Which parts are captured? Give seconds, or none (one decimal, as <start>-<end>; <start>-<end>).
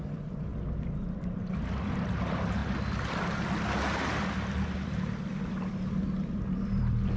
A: 0.5-1.5; 2.6-5.7